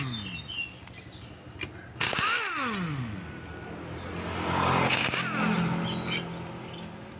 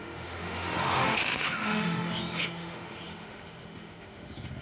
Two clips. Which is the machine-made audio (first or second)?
second